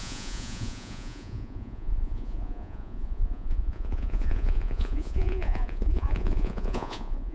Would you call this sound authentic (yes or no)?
no